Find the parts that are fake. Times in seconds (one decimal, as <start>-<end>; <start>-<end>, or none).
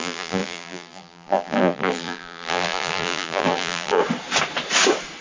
0.0-4.0